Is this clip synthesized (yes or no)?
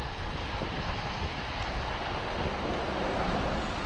no